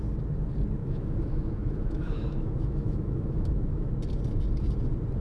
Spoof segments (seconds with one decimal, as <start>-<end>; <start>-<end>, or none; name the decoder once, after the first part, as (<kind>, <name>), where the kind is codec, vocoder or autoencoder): 0.8-3.9 (autoencoder, DAC-VAE)